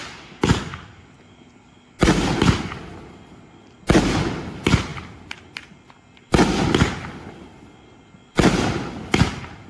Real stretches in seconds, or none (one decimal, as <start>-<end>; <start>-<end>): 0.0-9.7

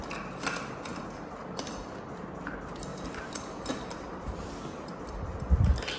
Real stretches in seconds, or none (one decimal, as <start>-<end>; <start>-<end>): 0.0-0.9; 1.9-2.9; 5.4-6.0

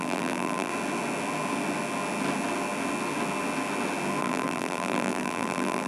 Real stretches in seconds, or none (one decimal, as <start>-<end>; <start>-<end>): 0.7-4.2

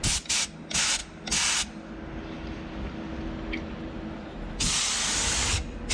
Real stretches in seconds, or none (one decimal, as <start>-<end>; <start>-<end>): 0.0-5.9